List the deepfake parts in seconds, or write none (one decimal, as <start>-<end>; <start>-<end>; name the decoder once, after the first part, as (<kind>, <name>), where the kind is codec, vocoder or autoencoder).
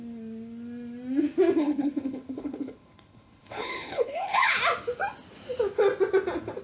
1.6-4.5 (codec, HILCodec)